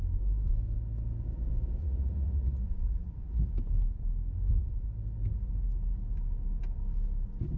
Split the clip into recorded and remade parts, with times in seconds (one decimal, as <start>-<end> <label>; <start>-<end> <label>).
0.0-1.8 recorded; 1.8-3.5 remade; 3.5-7.6 recorded

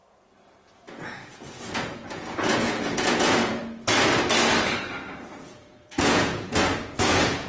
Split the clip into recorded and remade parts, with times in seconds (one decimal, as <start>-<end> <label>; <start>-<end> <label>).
0.0-3.6 remade; 3.6-5.4 recorded; 5.4-7.5 remade